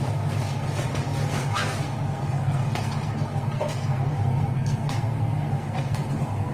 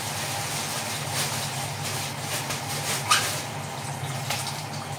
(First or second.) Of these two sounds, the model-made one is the first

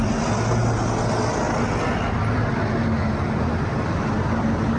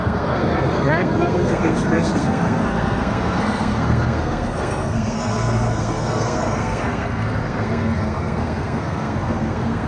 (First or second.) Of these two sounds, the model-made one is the second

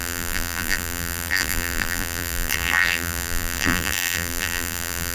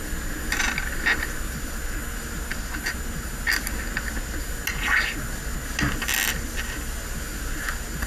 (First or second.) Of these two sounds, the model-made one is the first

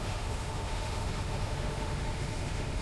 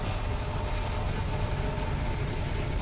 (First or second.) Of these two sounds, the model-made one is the first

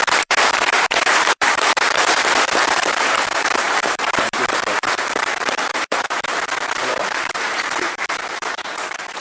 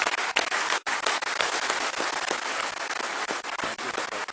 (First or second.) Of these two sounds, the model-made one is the first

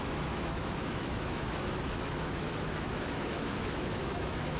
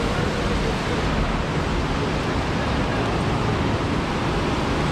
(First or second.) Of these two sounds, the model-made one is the first